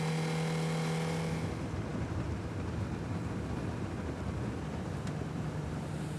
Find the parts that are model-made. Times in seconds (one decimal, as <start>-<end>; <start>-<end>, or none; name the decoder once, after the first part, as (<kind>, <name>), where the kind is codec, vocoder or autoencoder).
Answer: none